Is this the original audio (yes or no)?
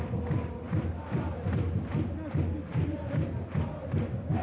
yes